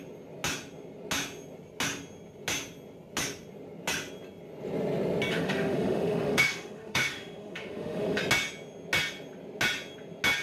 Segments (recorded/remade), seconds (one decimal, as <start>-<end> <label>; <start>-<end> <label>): 0.0-5.3 recorded; 5.3-8.2 remade; 8.2-10.4 recorded